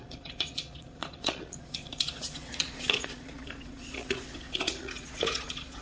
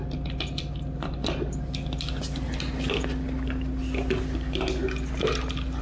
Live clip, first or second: second